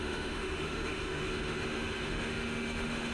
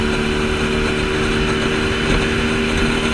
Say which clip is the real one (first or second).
second